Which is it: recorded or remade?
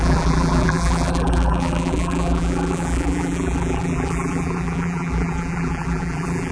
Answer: remade